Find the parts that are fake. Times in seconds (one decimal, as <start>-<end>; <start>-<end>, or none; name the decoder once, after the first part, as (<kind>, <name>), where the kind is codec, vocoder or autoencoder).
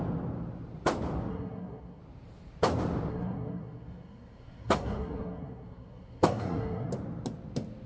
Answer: 1.3-2.0 (codec, SNAC); 3.1-6.9